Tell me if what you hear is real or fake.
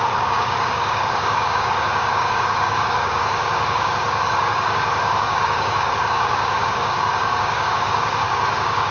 fake